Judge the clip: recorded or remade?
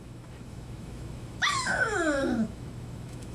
remade